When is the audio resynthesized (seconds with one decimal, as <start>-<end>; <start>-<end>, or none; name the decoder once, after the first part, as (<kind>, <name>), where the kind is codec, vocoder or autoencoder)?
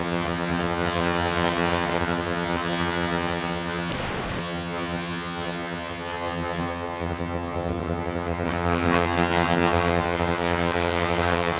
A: 0.0-3.9 (vocoder, HiFi-GAN); 4.4-11.6